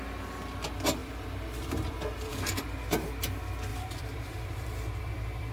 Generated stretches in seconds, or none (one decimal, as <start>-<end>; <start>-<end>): 1.0-1.9; 2.3-2.9; 3.7-5.5

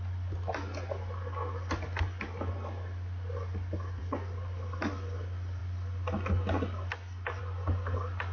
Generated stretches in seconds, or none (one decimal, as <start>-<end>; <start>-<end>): none

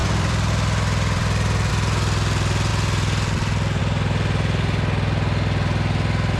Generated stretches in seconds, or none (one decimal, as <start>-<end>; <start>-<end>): 0.0-1.7

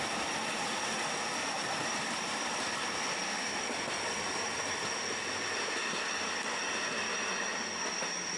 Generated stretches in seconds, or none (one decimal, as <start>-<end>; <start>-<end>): 1.4-4.9

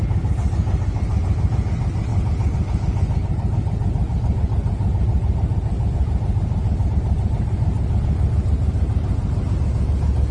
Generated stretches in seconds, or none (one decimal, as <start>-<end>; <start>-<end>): 8.6-9.9